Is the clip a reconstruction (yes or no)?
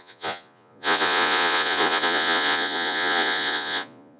yes